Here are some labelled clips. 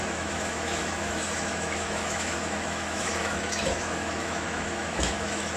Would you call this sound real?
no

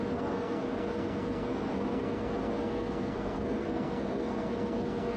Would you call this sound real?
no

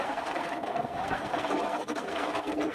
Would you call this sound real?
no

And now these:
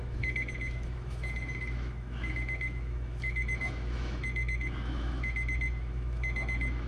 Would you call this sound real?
no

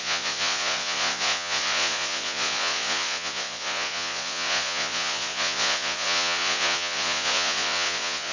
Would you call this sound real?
no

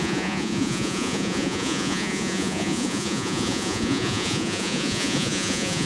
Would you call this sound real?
no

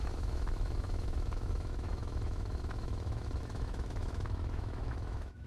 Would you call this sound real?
no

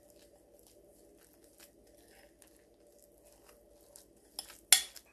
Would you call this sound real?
yes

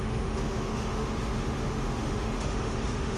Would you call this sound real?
no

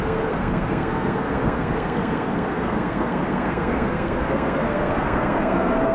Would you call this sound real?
no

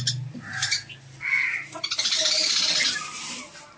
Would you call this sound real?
yes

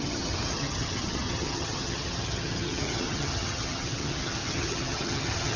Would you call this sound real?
no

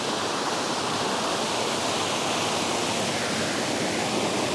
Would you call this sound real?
yes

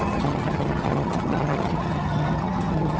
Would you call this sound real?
no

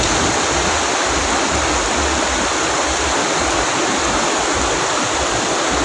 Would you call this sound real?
yes